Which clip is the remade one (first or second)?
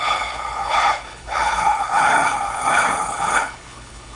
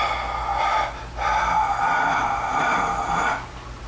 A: first